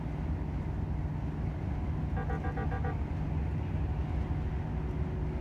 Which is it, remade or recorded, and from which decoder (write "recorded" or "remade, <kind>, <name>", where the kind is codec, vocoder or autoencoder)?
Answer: recorded